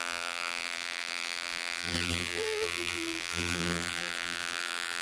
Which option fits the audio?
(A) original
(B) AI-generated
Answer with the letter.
B